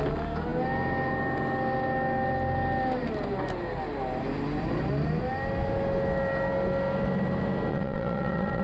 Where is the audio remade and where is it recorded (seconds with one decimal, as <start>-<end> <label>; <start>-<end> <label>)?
0.0-7.7 recorded; 7.7-8.6 remade